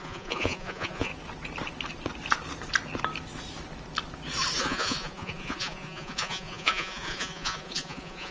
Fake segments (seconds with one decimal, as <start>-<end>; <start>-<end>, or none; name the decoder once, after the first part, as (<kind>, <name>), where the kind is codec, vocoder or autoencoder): 0.0-1.1 (vocoder, Vocos); 4.6-8.3